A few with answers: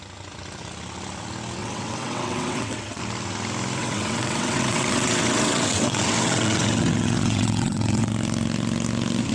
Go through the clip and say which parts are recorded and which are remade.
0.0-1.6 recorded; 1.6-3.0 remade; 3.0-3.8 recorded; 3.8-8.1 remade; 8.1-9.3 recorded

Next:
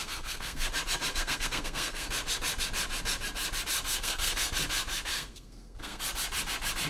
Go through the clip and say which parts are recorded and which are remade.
0.0-0.7 remade; 0.7-1.1 recorded; 1.1-2.1 remade; 2.1-3.9 recorded; 3.9-4.5 remade; 4.5-5.1 recorded; 5.1-6.0 remade; 6.0-6.9 recorded

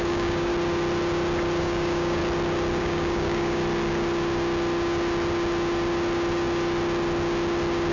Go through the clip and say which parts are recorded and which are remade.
0.0-0.5 remade; 0.5-1.6 recorded; 1.6-2.2 remade; 2.2-2.8 recorded; 2.8-3.6 remade; 3.6-7.9 recorded

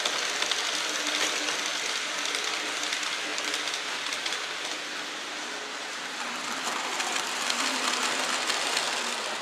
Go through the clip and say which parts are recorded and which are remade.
0.0-1.7 recorded; 1.7-2.4 remade; 2.4-3.3 recorded; 3.3-7.6 remade; 7.6-9.4 recorded

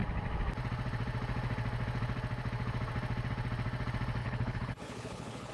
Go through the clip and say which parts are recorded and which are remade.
0.0-4.2 recorded; 4.2-5.5 remade

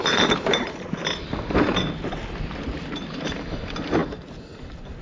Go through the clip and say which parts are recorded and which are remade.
0.0-5.0 recorded

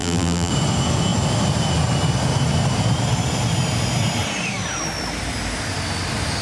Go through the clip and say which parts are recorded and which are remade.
0.0-0.5 remade; 0.5-6.4 recorded

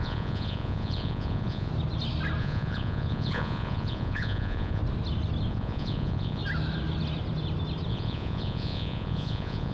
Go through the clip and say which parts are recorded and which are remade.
0.0-1.7 remade; 1.7-2.4 recorded; 2.4-4.8 remade; 4.8-5.5 recorded; 5.5-6.4 remade; 6.4-7.9 recorded; 7.9-9.7 remade